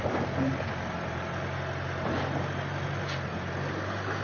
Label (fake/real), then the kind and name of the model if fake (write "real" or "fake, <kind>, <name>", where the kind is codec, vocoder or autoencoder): real